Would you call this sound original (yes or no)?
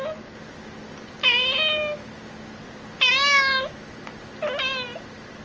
yes